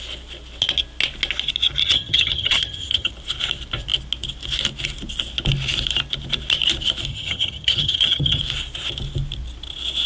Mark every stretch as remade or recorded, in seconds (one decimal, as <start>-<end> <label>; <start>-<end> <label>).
0.0-1.8 recorded; 1.8-3.1 remade; 3.1-7.1 recorded; 7.1-8.4 remade; 8.4-10.1 recorded

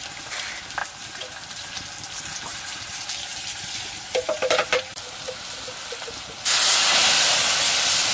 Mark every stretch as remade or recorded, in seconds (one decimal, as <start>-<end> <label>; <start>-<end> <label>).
0.0-0.8 recorded; 0.8-1.7 remade; 1.7-2.3 recorded; 2.3-4.8 remade; 4.8-7.0 recorded; 7.0-7.5 remade; 7.5-8.1 recorded

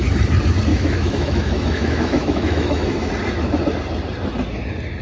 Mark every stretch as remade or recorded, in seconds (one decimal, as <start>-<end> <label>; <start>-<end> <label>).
0.0-0.7 recorded; 0.7-3.1 remade; 3.1-5.0 recorded